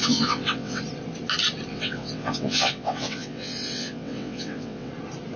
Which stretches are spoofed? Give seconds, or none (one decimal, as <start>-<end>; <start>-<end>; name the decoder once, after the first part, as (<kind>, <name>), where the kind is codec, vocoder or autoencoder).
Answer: 0.0-0.8 (vocoder, WaveNeXt); 1.7-4.9